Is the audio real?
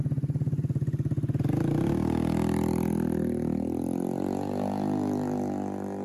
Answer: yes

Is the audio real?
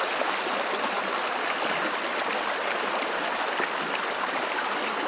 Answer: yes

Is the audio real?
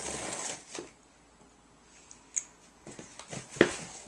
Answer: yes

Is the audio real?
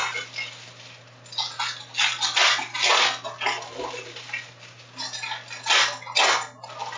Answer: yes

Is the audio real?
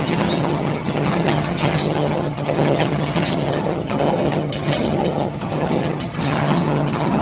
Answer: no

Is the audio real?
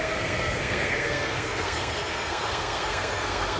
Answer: no